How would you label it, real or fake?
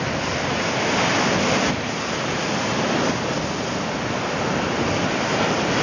real